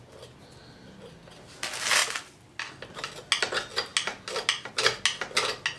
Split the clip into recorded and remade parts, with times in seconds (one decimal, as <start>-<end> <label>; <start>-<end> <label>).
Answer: 0.0-5.8 recorded